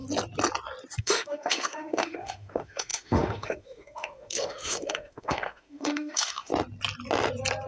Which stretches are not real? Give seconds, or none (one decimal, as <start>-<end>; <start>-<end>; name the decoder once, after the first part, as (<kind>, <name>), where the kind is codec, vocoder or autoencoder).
1.0-6.5 (autoencoder, DAC-VAE)